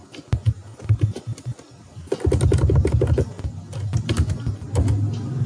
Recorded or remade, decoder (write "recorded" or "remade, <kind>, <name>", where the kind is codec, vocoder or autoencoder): recorded